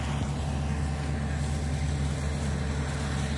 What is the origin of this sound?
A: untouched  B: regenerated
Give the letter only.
A